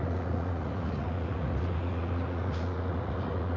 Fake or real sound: fake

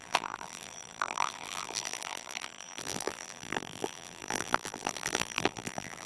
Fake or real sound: fake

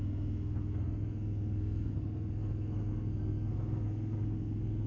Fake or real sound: fake